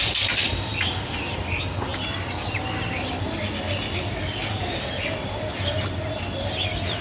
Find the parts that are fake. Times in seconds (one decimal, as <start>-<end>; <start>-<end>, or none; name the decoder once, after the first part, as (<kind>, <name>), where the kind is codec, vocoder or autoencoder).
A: none